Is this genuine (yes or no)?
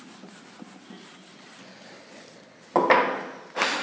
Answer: yes